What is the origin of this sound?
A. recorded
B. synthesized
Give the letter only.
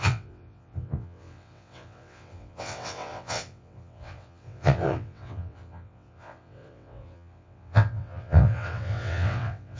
B